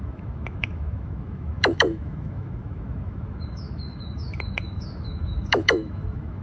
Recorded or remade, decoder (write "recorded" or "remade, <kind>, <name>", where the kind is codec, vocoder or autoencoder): remade, autoencoder, DAC-VAE